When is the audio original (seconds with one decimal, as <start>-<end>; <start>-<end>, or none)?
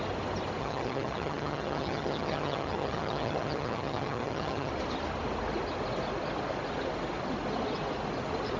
0.0-0.6; 4.7-8.6